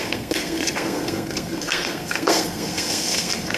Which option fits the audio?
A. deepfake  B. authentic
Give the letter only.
A